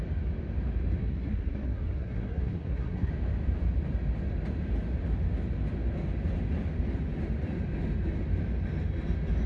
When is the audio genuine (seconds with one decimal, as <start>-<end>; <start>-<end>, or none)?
0.0-1.0; 3.1-9.5